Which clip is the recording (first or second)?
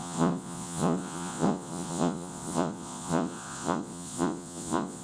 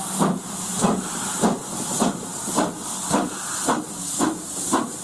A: second